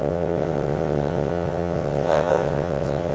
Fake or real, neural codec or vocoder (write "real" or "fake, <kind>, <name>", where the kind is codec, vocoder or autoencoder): fake, vocoder, WaveNeXt